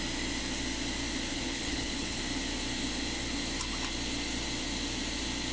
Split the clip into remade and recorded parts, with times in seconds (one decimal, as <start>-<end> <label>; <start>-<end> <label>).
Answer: 0.0-1.3 recorded; 1.3-2.2 remade; 2.2-5.5 recorded